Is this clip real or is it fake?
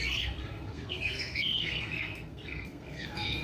fake